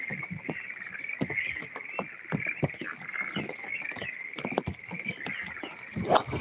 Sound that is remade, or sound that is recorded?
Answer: recorded